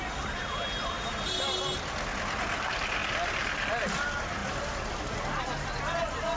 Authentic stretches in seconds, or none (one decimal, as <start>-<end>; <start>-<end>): 0.0-6.4

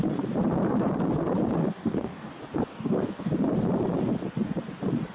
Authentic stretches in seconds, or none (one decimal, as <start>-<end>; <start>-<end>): 0.0-1.6; 2.3-2.7; 3.3-5.1

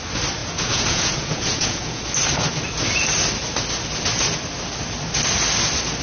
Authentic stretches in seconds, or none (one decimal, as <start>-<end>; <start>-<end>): 0.0-0.4; 2.0-6.0

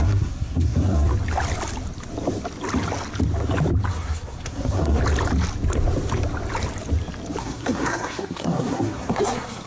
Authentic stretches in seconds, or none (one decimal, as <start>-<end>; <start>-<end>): 1.1-3.9; 5.0-7.4

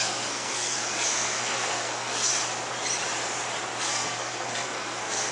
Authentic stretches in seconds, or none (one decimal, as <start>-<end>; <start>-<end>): 2.3-3.8